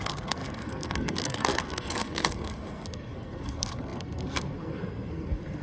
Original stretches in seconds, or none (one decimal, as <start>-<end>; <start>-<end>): none